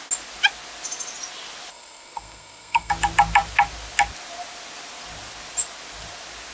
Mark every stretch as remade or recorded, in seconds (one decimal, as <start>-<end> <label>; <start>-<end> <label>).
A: 0.0-1.7 recorded; 1.7-2.9 remade; 2.9-6.5 recorded